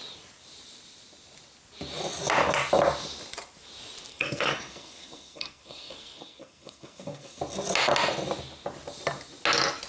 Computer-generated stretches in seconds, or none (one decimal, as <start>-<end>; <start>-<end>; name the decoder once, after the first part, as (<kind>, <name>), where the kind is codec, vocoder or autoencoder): 4.1-7.4 (codec, SNAC)